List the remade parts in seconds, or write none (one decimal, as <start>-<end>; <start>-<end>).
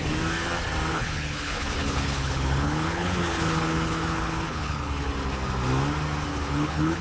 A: 0.9-5.1; 6.3-7.0